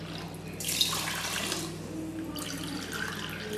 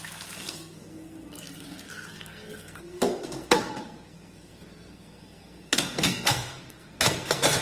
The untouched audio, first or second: first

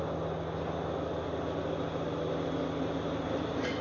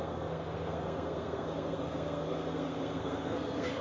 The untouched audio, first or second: first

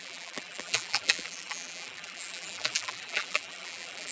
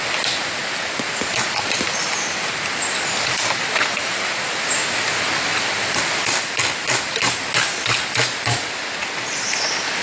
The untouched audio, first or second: second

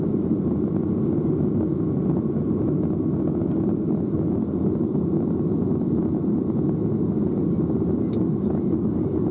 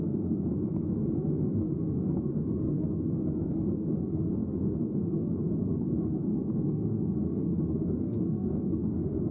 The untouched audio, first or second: first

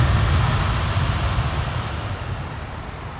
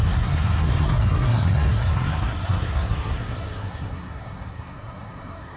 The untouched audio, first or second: first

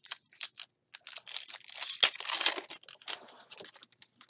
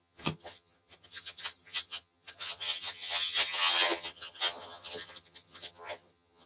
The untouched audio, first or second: first